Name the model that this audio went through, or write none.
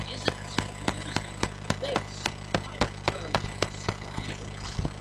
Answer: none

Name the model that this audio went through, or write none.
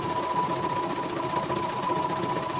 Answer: vocoder, BigVGAN v2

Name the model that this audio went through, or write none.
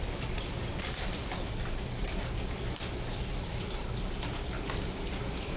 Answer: vocoder, BigVGAN v2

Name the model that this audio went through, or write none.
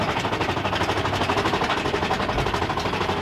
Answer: none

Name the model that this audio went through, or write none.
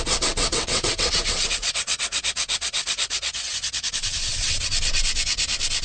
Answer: vocoder, WaveNeXt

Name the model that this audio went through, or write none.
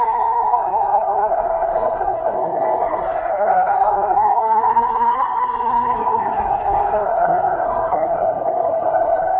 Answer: codec, SNAC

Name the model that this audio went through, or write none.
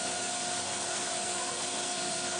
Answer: codec, SNAC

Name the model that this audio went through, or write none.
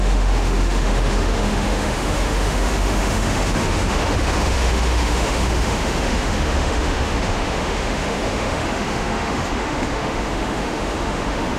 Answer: autoencoder, DAC-VAE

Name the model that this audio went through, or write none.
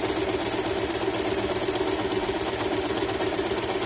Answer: none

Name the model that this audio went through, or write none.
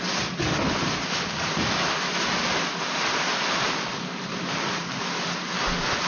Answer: none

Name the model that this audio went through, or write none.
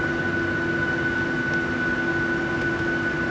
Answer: none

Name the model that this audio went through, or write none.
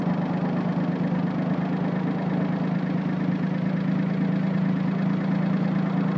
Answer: none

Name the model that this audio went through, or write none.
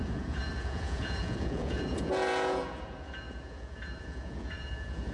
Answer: vocoder, Vocos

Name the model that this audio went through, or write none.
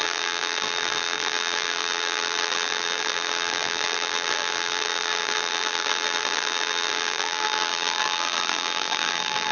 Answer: vocoder, BigVGAN v2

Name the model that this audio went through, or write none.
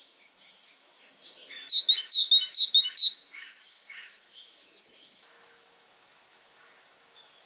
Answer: autoencoder, DAC-VAE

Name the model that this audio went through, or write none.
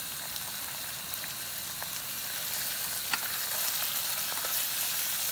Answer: none